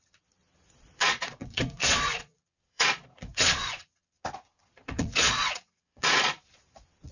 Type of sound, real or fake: fake